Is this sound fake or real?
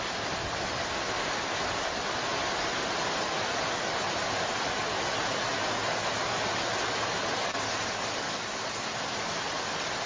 real